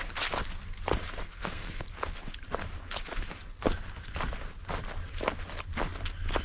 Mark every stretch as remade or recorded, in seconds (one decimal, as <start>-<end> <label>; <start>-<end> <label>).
0.0-1.2 recorded; 1.2-1.8 remade; 1.8-6.4 recorded